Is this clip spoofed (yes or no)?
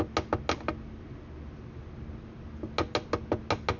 no